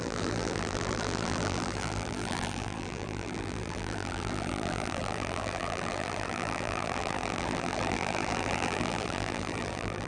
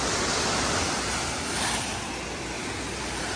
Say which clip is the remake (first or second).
first